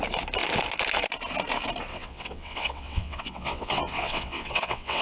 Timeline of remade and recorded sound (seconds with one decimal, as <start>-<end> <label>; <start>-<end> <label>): 0.0-1.9 recorded; 1.9-5.0 remade